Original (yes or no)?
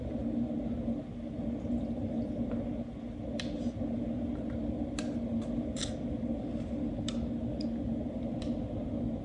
yes